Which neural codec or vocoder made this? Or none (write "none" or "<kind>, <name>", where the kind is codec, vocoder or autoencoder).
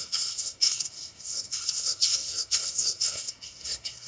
codec, SNAC